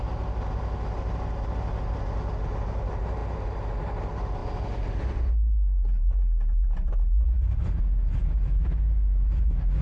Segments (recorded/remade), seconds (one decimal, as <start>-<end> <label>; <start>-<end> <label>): 0.0-9.8 recorded